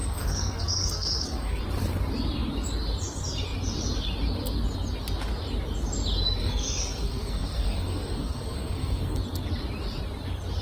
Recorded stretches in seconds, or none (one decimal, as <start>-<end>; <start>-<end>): 1.6-6.4; 9.2-10.6